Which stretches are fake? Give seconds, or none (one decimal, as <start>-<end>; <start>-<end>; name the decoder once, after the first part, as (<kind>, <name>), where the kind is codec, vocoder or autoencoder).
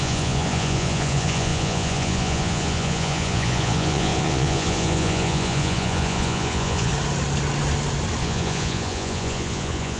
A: 0.0-6.9 (vocoder, Vocos); 8.2-10.0